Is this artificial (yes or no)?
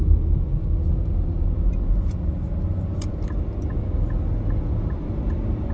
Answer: no